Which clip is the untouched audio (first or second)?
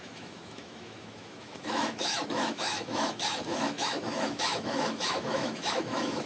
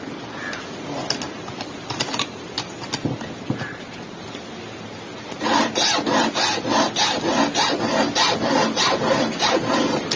second